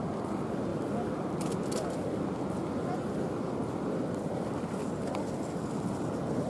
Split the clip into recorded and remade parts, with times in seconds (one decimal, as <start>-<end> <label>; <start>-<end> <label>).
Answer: 0.0-6.5 recorded